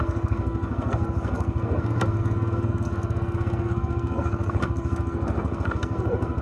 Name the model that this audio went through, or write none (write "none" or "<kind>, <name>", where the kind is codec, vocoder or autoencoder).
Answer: codec, SNAC